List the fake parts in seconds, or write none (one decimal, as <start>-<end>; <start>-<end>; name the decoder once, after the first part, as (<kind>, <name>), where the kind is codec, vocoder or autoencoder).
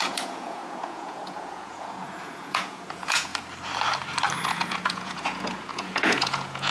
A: 0.0-3.3 (vocoder, Vocos); 4.4-6.7